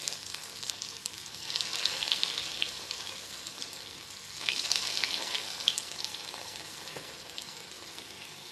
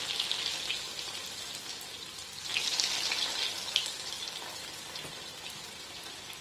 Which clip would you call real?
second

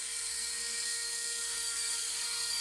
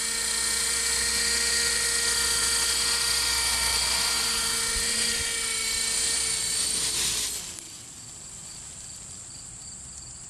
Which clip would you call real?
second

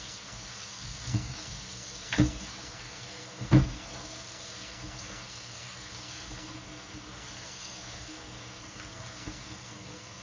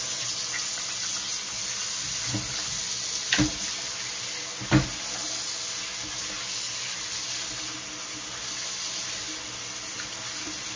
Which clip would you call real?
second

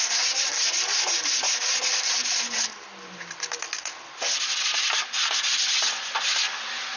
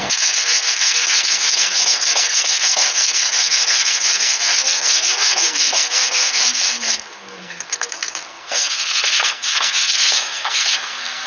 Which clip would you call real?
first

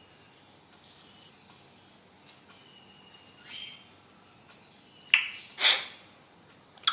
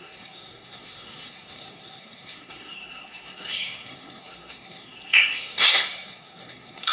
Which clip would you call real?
first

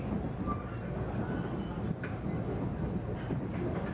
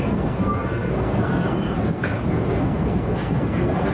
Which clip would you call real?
first